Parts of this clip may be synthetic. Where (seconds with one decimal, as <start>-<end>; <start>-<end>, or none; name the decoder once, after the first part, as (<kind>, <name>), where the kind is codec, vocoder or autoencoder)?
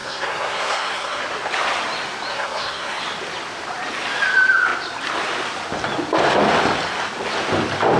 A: 0.0-1.2 (codec, SNAC); 2.3-3.0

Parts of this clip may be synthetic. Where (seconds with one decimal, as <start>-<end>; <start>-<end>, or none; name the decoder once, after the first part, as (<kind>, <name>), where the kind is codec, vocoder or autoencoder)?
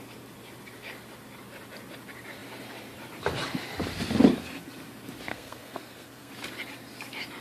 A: 5.3-6.3 (codec, SNAC)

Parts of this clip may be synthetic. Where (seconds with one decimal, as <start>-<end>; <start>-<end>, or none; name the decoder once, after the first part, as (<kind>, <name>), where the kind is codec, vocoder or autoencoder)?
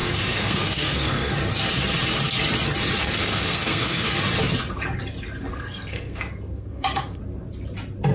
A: 0.0-1.3 (codec, SNAC); 3.0-4.1; 5.5-7.2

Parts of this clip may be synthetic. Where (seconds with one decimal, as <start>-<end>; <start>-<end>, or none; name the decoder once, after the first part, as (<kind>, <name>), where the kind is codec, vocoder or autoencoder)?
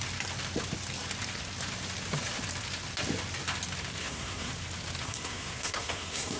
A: 4.0-4.5 (codec, SNAC); 5.0-6.4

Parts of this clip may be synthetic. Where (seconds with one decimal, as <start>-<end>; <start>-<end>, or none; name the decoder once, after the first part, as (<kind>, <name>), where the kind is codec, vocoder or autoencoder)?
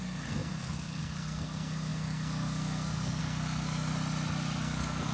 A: 0.0-3.9 (codec, SNAC); 4.6-5.1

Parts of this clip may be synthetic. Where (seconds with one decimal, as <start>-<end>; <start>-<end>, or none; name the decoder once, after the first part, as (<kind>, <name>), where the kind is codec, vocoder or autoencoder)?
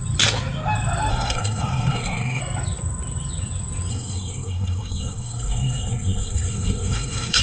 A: 1.1-2.4 (codec, SNAC); 3.9-7.4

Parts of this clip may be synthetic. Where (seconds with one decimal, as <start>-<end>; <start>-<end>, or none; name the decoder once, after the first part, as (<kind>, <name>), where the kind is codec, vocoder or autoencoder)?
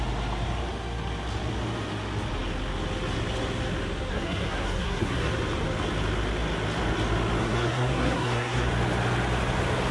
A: 4.1-5.3 (codec, SNAC); 7.4-8.7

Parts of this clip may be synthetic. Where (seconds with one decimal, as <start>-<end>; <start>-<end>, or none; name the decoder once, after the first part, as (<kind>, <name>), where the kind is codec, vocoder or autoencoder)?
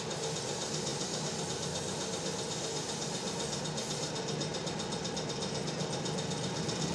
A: none